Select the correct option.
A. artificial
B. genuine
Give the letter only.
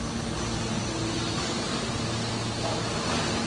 B